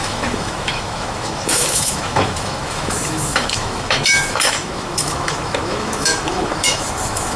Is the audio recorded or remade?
remade